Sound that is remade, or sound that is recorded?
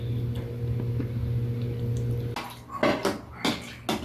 recorded